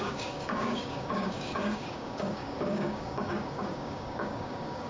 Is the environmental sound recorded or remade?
remade